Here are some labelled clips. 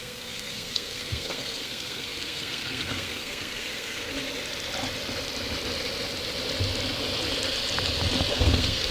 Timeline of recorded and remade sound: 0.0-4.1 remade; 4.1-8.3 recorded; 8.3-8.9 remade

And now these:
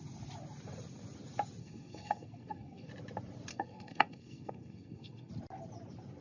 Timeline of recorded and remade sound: 0.0-1.6 recorded; 1.6-2.9 remade; 2.9-3.5 recorded; 3.5-5.3 remade; 5.3-6.2 recorded

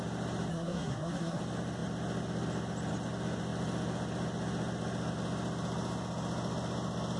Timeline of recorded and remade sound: 0.0-0.5 recorded; 0.5-1.4 remade; 1.4-7.2 recorded

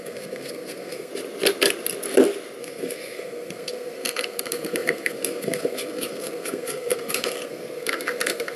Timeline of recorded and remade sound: 0.0-1.1 remade; 1.1-2.6 recorded; 2.6-8.6 remade

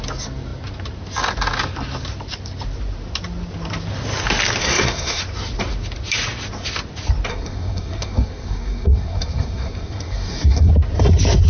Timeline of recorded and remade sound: 0.0-4.6 recorded; 4.6-5.2 remade; 5.2-7.3 recorded; 7.3-10.7 remade; 10.7-11.5 recorded